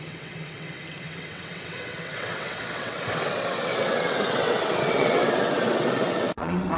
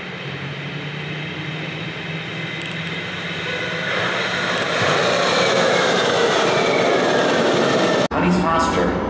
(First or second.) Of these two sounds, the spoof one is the first